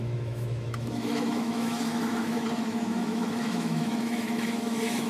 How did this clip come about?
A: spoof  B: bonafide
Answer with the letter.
A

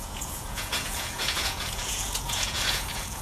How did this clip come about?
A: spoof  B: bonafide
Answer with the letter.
A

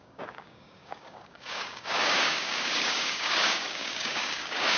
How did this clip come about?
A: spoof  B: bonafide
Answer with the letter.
A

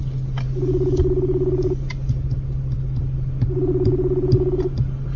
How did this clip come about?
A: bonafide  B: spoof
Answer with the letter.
A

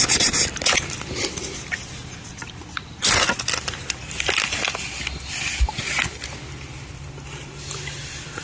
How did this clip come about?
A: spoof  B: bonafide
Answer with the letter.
B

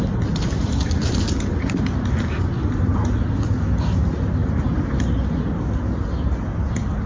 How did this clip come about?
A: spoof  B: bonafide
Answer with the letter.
B